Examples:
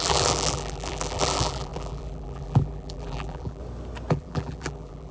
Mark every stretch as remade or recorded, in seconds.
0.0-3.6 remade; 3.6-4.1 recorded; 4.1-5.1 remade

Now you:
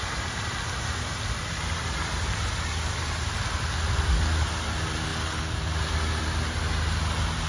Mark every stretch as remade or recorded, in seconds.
0.0-7.5 recorded

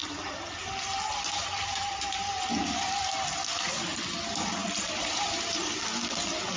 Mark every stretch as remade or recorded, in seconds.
0.0-4.6 recorded; 4.6-5.8 remade; 5.8-6.6 recorded

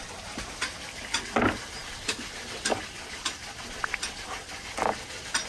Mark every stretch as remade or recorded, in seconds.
0.0-5.5 recorded

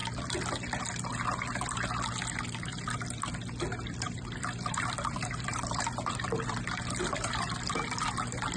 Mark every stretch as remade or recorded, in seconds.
0.0-0.5 remade; 0.5-2.7 recorded; 2.7-7.9 remade; 7.9-8.6 recorded